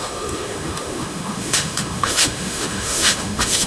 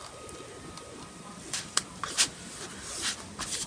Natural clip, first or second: second